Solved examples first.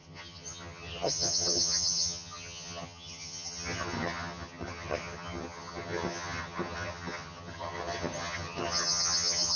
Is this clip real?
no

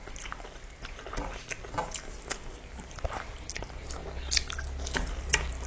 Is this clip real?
yes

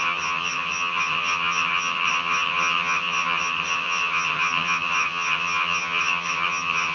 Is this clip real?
no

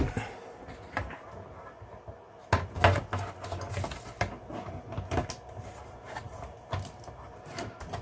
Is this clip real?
yes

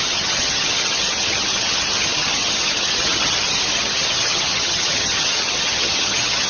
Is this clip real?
no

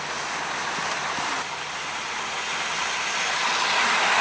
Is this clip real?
yes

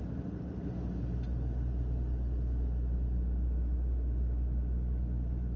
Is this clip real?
yes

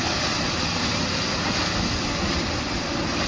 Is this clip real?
yes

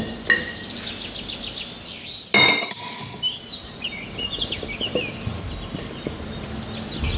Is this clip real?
yes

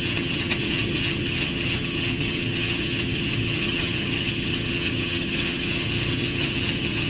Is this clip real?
no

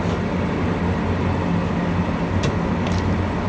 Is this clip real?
yes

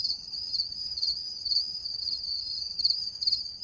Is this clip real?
no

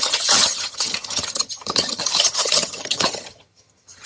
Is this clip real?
no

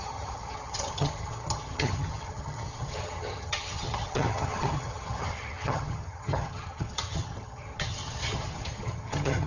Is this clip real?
no